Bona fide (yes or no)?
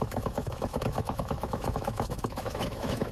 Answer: no